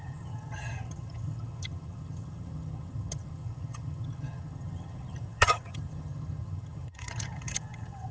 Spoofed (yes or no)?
yes